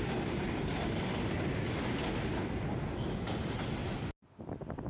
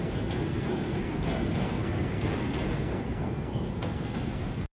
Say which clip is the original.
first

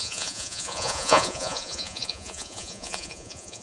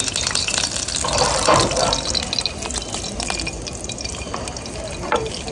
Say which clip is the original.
second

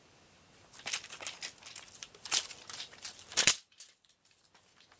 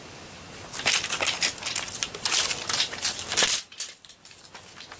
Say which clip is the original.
second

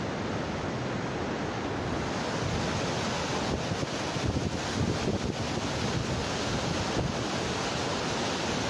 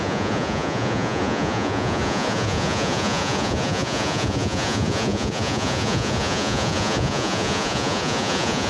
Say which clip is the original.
first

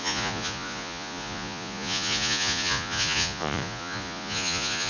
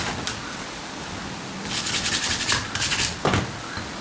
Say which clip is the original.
second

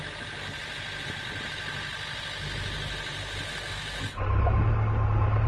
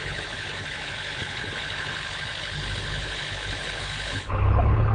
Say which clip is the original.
first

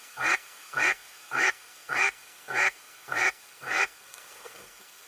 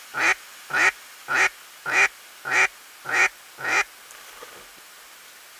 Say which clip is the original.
second